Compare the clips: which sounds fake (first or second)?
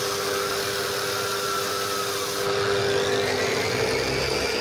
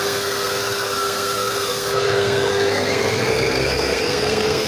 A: second